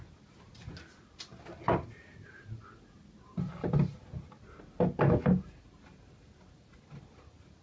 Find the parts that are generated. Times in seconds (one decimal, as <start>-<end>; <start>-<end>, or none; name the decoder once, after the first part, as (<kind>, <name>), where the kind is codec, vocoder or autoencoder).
none